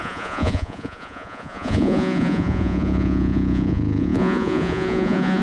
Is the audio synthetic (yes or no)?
yes